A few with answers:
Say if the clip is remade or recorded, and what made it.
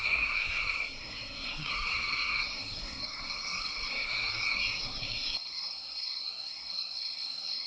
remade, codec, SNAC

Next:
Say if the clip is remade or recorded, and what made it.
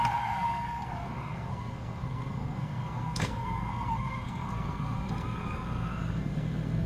remade, codec, SNAC